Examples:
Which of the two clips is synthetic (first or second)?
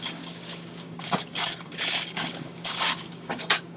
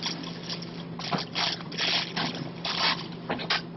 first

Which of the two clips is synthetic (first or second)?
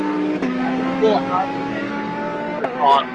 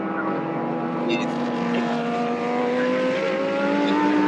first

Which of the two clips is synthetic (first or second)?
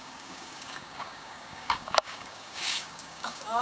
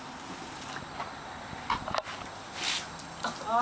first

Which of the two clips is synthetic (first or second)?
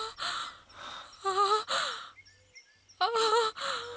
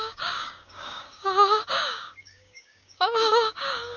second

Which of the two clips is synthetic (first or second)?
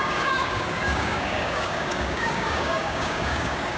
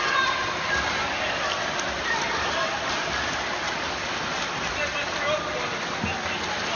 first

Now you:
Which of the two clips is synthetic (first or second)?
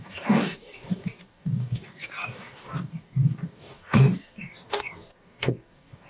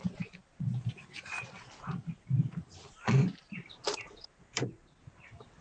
first